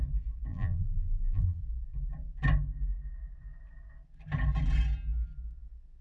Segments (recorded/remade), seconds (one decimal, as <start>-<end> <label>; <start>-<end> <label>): 0.0-0.5 recorded; 0.5-1.6 remade; 1.6-6.0 recorded